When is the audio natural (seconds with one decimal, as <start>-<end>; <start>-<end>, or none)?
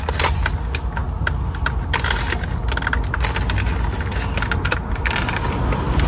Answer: 0.0-6.1